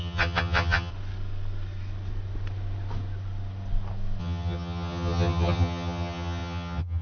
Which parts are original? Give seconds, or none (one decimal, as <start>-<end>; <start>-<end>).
0.9-4.2